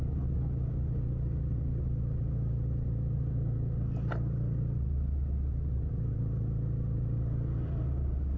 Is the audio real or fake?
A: real